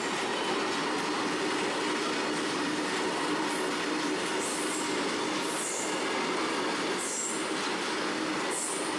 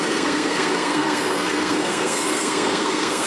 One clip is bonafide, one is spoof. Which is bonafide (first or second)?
first